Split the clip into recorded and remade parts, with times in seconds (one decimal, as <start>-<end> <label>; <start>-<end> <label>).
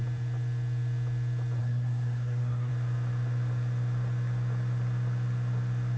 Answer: 0.0-1.6 recorded; 1.6-2.7 remade; 2.7-6.0 recorded